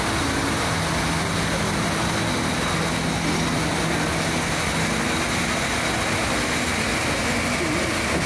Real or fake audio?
real